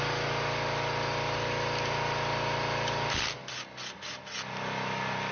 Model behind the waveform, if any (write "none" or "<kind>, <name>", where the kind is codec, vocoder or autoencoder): none